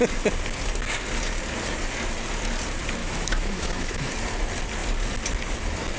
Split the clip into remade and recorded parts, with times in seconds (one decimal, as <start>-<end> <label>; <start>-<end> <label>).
0.0-3.0 recorded; 3.0-4.1 remade; 4.1-6.0 recorded